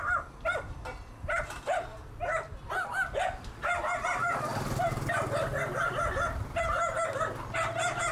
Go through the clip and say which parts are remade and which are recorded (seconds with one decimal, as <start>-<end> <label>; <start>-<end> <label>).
0.0-8.1 recorded